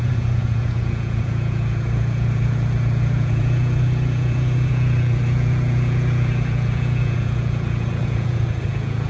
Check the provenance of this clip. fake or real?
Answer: fake